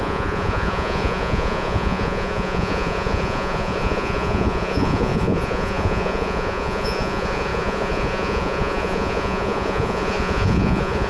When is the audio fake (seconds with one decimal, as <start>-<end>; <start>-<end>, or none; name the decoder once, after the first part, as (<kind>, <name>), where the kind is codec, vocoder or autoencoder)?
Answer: 0.0-11.1 (vocoder, Vocos)